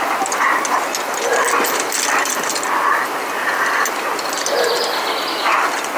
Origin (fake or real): real